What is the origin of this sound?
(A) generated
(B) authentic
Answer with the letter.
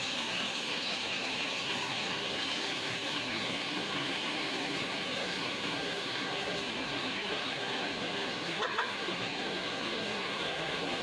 A